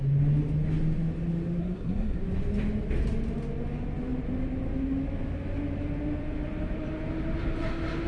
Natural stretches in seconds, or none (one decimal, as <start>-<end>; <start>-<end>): 0.0-1.6; 2.2-8.1